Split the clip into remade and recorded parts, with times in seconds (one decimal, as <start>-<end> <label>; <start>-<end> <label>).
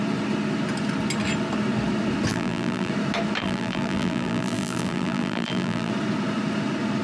0.0-2.3 recorded; 2.3-2.9 remade; 2.9-3.4 recorded; 3.4-5.9 remade; 5.9-7.0 recorded